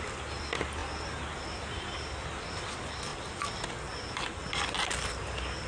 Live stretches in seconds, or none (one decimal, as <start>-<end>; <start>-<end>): 0.0-5.7